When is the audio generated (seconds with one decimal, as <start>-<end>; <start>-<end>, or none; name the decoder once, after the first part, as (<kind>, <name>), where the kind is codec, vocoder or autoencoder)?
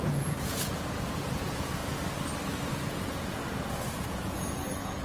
0.0-1.8 (vocoder, Vocos); 2.7-3.4; 3.9-5.0